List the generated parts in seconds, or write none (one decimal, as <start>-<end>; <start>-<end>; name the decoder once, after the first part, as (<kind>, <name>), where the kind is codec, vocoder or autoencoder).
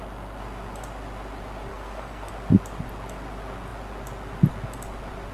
1.7-2.3 (codec, SNAC)